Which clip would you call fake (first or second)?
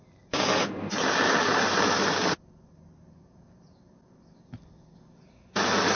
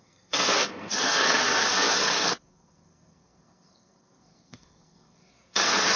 second